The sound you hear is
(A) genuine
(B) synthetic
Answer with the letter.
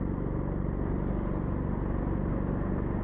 A